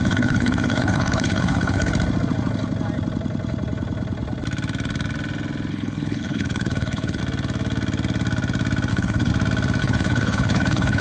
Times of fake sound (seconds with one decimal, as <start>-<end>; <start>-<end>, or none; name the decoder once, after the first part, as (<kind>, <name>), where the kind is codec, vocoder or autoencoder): 0.0-1.9 (codec, HILCodec); 5.7-7.2; 8.9-9.3; 9.8-11.0

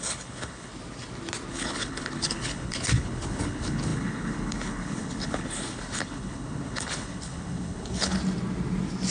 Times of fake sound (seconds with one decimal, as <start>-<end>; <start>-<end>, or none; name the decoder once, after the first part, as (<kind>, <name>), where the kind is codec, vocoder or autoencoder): 0.0-0.7 (codec, HILCodec); 1.5-8.2

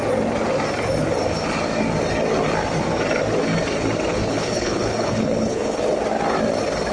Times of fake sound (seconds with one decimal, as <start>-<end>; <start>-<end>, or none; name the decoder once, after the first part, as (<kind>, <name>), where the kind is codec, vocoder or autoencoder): 4.1-5.9 (codec, HILCodec)

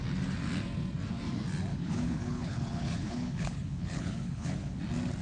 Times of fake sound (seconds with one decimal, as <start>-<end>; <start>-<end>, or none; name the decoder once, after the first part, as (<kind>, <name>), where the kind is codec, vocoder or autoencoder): 1.7-4.8 (codec, HILCodec)

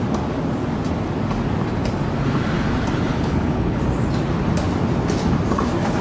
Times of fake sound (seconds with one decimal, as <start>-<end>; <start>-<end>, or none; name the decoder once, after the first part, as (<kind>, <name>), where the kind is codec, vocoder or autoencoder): 3.1-3.8 (codec, HILCodec)

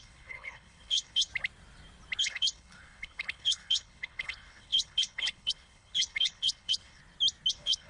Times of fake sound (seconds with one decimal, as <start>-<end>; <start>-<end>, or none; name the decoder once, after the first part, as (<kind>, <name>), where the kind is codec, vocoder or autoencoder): 0.0-1.3 (codec, HILCodec); 2.2-7.0; 7.5-7.9